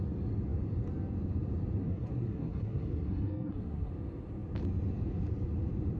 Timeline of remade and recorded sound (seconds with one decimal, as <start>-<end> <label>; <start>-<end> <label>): 0.0-1.8 recorded; 1.8-3.9 remade; 3.9-6.0 recorded